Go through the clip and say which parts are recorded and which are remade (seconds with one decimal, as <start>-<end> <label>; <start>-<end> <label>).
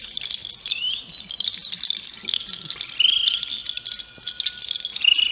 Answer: 0.0-5.3 recorded